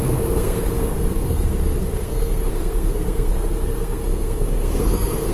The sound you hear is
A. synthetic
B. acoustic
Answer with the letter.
A